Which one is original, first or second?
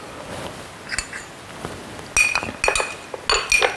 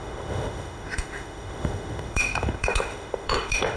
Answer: first